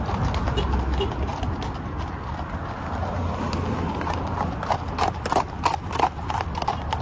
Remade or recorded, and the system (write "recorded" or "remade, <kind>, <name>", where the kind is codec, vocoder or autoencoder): recorded